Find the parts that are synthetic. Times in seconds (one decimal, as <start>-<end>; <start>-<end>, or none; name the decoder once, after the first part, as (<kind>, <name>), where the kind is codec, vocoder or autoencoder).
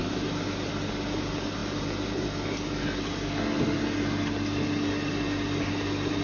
none